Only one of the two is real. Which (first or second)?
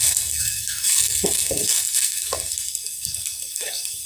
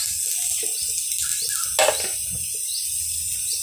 second